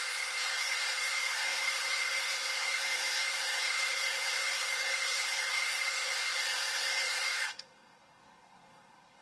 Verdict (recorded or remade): remade